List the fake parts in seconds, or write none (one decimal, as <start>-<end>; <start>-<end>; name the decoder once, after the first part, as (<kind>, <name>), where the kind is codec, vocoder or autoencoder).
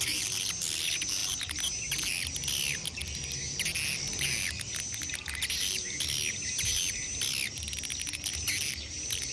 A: none